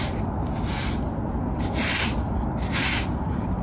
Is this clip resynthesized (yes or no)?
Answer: no